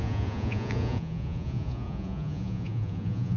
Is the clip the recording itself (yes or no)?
no